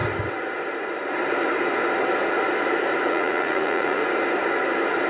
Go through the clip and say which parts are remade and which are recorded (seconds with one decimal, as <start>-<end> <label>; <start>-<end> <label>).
0.0-3.1 recorded; 3.1-4.0 remade; 4.0-5.1 recorded